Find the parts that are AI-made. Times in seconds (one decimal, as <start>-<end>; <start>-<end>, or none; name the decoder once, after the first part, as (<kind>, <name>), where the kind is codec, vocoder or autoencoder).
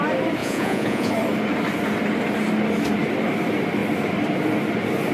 0.4-1.1 (vocoder, Vocos)